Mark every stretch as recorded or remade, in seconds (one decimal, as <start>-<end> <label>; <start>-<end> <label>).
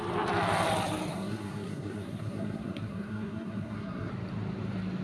0.0-1.1 recorded; 1.1-4.1 remade; 4.1-5.0 recorded